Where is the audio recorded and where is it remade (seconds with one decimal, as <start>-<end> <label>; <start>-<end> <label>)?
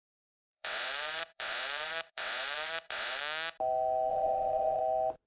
0.0-3.2 remade; 3.2-4.1 recorded; 4.1-4.8 remade; 4.8-5.3 recorded